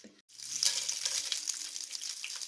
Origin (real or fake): real